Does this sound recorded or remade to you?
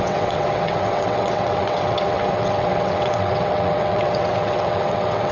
remade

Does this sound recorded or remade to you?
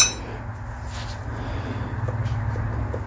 recorded